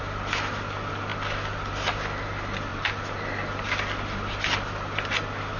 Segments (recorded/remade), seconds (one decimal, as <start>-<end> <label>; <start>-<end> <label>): 0.0-5.6 recorded